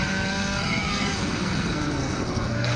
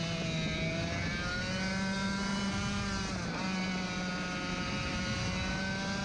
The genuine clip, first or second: second